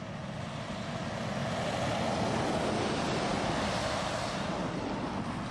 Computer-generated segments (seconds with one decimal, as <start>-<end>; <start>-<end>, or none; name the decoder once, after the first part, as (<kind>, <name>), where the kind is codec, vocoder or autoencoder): none